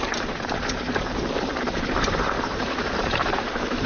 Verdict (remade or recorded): remade